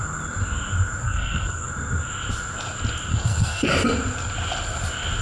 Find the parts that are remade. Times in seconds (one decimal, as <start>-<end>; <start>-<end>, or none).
1.0-1.7; 3.1-3.7